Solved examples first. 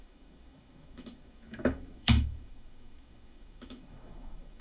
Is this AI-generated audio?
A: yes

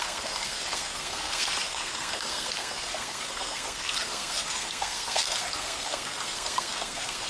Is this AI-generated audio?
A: yes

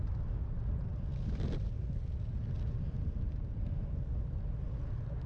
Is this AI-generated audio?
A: no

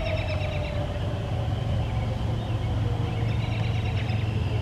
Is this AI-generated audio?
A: no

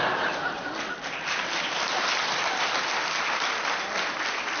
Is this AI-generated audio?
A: no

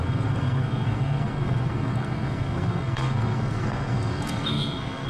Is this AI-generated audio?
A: yes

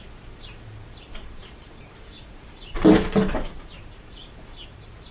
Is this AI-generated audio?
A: yes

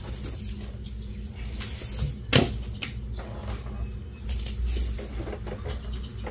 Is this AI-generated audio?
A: no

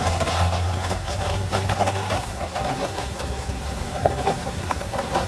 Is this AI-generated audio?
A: yes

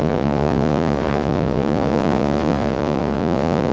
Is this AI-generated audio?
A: yes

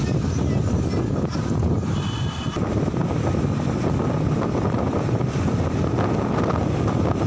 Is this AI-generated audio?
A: no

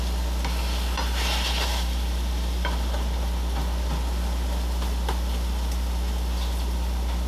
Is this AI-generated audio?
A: no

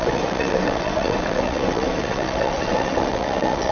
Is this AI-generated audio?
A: yes